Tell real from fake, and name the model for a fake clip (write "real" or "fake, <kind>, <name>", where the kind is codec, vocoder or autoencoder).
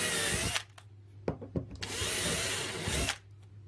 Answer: real